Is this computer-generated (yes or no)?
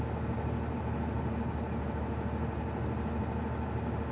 no